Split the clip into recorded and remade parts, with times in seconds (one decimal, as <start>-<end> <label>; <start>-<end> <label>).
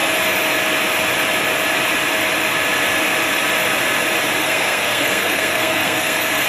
0.0-4.4 recorded; 4.4-6.5 remade